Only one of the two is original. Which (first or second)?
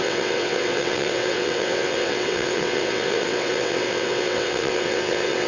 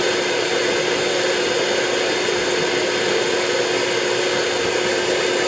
second